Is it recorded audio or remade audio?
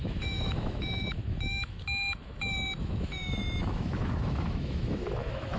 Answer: remade